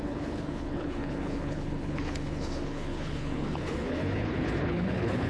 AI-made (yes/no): yes